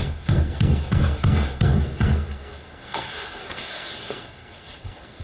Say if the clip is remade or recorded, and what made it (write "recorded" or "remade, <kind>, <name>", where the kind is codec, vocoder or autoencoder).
remade, codec, SNAC